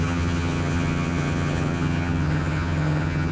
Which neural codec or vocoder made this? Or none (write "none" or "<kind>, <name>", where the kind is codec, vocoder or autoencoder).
vocoder, HiFi-GAN